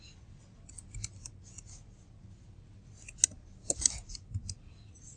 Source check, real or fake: real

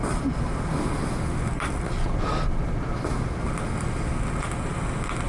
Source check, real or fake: real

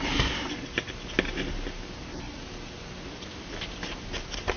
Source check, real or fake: real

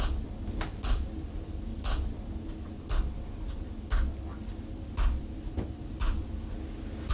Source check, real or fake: real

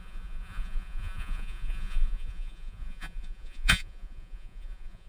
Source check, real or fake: fake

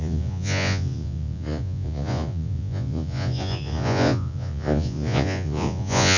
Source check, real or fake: fake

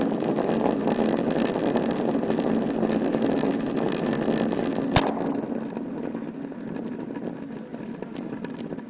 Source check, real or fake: real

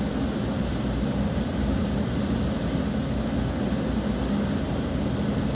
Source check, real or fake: real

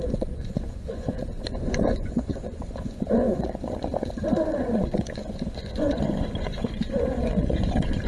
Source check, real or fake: fake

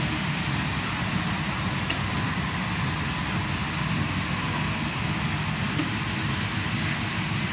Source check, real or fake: real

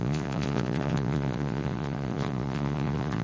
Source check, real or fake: fake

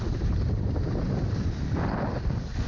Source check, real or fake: real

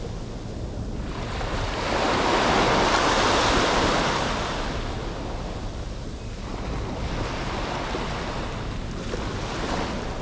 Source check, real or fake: real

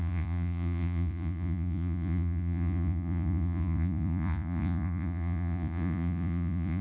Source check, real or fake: fake